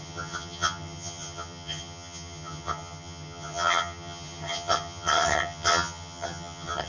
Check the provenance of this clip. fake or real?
fake